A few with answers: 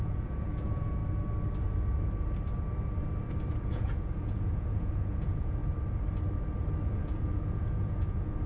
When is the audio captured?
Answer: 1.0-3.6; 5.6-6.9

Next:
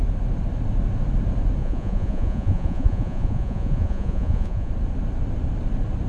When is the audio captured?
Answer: 0.0-1.6; 4.7-6.1

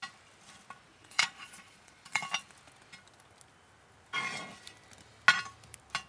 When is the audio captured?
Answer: 0.0-0.9; 2.2-6.1